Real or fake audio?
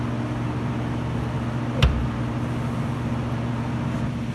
real